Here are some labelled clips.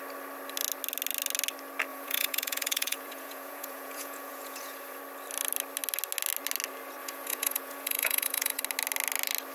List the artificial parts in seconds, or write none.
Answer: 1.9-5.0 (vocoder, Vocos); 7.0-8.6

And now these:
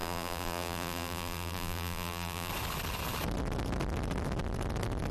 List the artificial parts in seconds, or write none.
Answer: 0.0-2.5 (vocoder, BigVGAN v2)

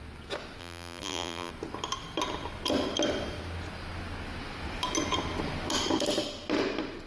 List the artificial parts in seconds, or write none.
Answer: 0.6-1.5 (vocoder, BigVGAN v2)

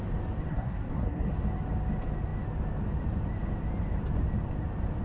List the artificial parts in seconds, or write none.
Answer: 0.5-1.3 (codec, SNAC)

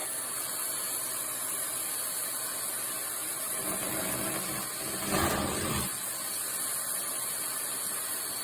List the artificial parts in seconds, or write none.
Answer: 3.2-4.1 (vocoder, BigVGAN v2); 5.9-6.6

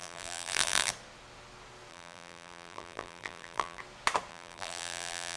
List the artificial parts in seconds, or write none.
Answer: 0.0-0.9 (vocoder, BigVGAN v2); 1.9-3.8; 4.3-5.4

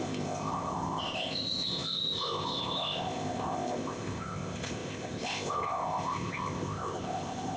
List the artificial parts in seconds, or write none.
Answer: 0.0-7.6 (codec, ZipCodec)

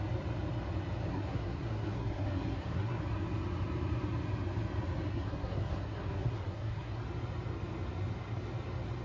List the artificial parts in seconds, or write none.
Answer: 1.1-3.0 (codec, SNAC); 5.1-7.0